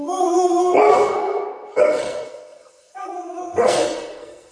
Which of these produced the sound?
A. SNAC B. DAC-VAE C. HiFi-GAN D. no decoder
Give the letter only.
A